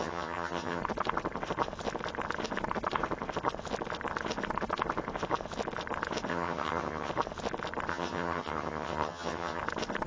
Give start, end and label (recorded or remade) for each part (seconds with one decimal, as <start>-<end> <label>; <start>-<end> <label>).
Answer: 0.0-0.8 remade; 0.8-6.3 recorded; 6.3-7.1 remade; 7.1-7.9 recorded; 7.9-9.6 remade; 9.6-10.1 recorded